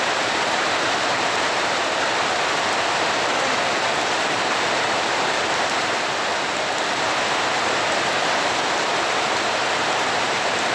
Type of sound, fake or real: real